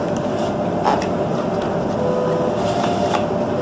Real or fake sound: real